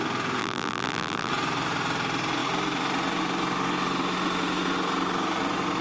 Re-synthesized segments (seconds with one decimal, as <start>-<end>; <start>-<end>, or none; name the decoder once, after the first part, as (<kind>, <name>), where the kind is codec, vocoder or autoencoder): 0.4-1.3 (vocoder, BigVGAN v2)